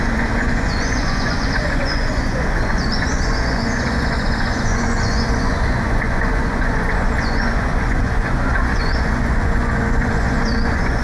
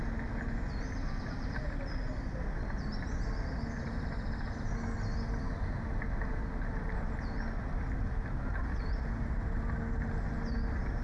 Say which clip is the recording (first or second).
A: second